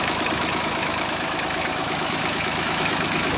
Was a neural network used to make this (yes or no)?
yes